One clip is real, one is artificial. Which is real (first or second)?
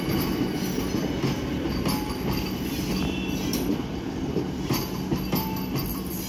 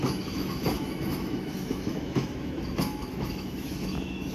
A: first